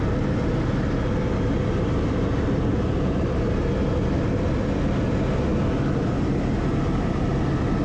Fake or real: real